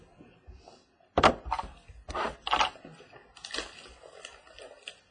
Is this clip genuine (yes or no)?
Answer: yes